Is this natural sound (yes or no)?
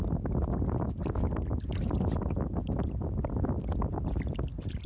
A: yes